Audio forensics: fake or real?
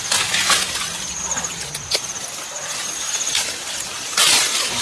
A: real